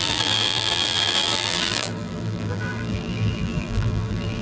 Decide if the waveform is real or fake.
fake